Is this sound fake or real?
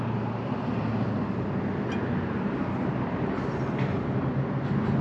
real